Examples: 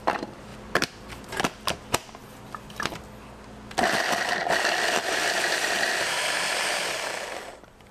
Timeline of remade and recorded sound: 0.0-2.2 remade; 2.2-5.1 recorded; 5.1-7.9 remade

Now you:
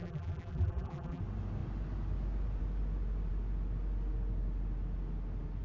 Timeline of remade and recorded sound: 0.0-1.2 remade; 1.2-5.6 recorded

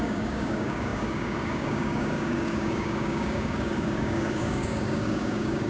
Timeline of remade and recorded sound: 0.0-5.7 remade

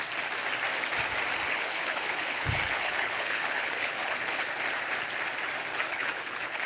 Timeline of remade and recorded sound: 0.0-1.6 recorded; 1.6-4.5 remade; 4.5-5.7 recorded; 5.7-6.7 remade